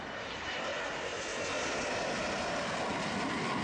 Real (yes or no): yes